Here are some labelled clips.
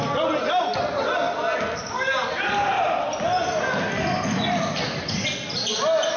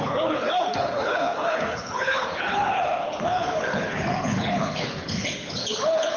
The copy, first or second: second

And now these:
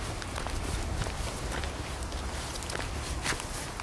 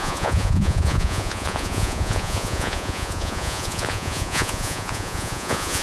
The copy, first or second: second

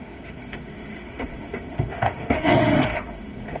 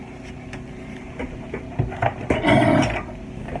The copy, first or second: first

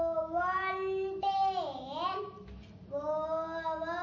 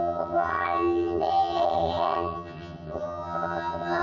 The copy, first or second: second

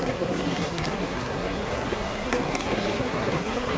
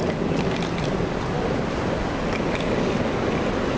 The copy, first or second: first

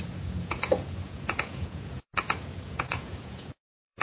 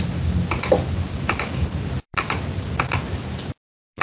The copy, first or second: first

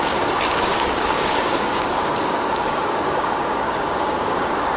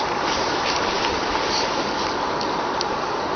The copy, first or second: first